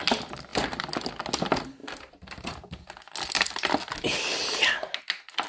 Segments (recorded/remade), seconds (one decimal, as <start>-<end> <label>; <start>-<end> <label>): 0.0-0.5 recorded; 0.5-1.1 remade; 1.1-5.5 recorded